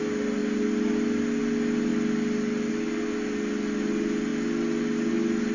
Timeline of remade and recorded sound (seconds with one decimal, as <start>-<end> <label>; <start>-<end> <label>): 0.0-5.5 recorded